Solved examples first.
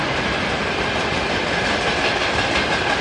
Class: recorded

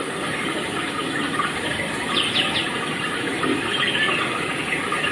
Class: remade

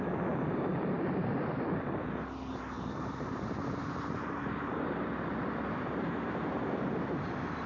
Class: remade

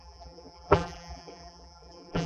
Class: remade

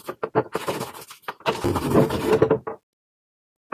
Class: recorded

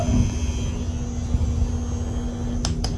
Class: recorded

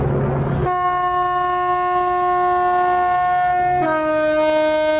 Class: recorded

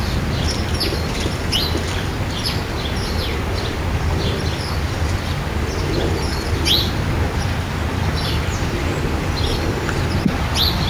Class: recorded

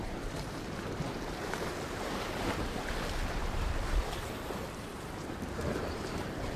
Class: remade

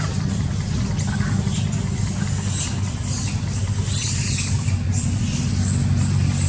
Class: recorded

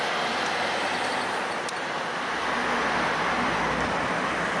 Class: remade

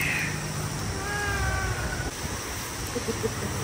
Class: recorded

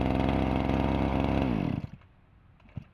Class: recorded